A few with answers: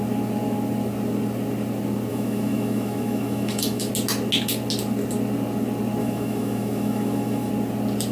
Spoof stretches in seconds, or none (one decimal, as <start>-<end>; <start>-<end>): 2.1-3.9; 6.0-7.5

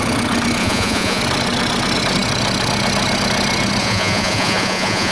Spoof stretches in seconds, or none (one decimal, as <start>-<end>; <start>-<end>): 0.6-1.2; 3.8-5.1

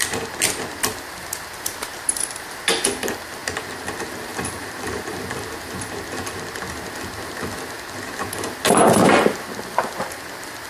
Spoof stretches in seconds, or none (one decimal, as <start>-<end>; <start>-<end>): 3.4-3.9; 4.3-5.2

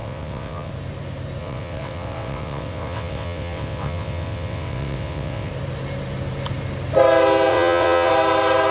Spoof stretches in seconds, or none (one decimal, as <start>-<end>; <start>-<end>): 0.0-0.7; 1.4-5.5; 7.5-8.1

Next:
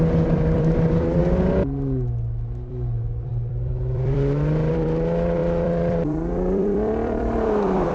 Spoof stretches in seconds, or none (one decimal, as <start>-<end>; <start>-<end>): 0.0-1.2; 2.7-7.9

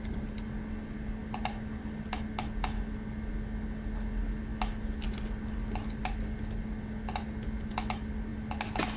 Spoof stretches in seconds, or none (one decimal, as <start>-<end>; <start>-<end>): none

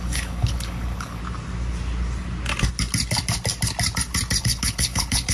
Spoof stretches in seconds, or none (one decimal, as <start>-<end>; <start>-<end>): 0.0-1.2; 4.4-5.3